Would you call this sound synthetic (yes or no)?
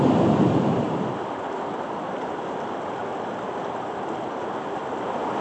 no